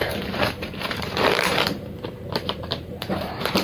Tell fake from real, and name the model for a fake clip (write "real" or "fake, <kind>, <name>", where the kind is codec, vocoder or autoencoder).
fake, vocoder, BigVGAN v2